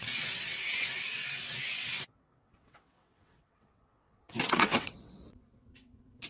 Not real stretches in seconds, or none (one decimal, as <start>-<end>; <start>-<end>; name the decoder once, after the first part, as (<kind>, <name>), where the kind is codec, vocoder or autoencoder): 0.0-6.3 (vocoder, WaveNeXt)